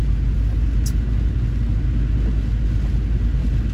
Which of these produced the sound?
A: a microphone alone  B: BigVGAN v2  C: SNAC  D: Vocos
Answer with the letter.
A